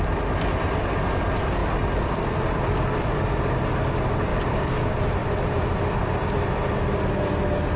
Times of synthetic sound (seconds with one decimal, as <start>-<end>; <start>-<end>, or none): 1.6-3.4; 4.3-4.8; 5.2-7.0